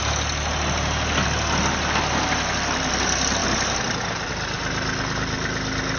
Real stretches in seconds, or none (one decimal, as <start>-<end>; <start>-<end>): 0.0-6.0